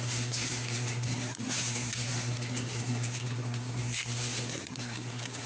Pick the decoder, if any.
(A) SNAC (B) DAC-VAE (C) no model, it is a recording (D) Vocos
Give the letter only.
A